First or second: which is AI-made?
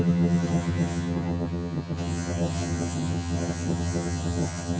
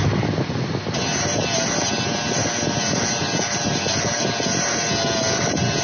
first